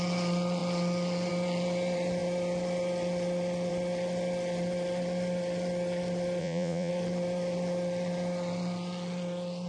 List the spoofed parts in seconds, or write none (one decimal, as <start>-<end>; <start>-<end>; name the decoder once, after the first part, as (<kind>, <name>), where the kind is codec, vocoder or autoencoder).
6.4-6.9 (vocoder, Vocos)